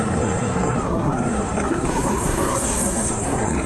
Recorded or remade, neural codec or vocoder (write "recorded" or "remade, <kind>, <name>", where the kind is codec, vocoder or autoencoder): remade, codec, SNAC